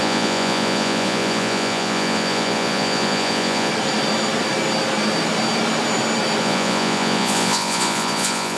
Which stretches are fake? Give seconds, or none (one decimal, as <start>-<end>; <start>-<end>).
0.0-3.7; 6.4-8.6